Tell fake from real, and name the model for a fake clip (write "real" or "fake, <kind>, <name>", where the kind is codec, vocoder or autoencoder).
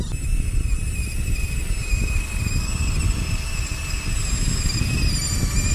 real